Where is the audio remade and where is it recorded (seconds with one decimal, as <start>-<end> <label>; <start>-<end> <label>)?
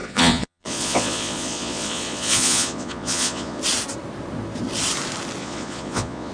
0.0-3.6 remade; 3.6-5.4 recorded; 5.4-6.3 remade